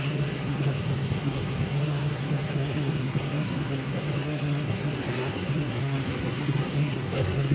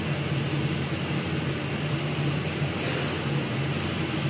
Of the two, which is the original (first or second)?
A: second